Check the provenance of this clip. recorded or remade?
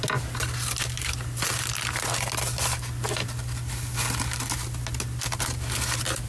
recorded